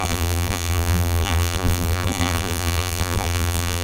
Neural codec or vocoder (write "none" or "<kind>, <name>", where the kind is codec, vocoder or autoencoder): vocoder, BigVGAN v2